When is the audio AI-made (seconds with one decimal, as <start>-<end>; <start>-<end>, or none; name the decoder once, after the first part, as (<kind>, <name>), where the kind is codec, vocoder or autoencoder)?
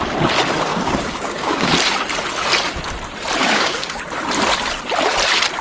0.7-1.7 (codec, DAC); 3.4-4.0